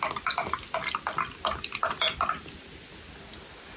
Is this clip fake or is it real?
real